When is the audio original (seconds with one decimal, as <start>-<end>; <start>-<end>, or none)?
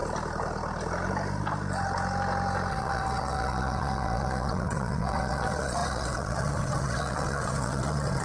0.0-2.7